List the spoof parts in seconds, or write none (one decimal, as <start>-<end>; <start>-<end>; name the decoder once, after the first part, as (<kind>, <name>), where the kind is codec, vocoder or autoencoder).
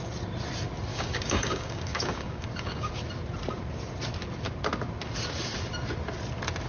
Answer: 0.9-2.9 (codec, DAC)